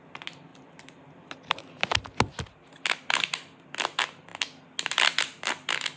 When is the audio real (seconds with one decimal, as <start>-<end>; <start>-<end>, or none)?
0.0-0.5; 1.8-6.0